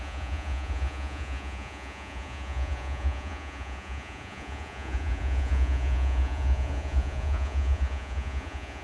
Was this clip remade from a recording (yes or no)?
yes